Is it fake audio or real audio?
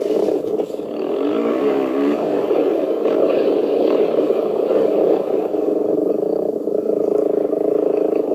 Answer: fake